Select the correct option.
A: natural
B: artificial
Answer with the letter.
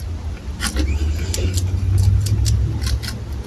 A